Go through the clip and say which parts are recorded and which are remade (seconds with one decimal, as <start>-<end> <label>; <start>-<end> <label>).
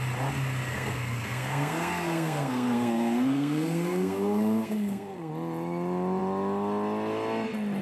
0.0-0.7 recorded; 0.7-5.3 remade; 5.3-7.8 recorded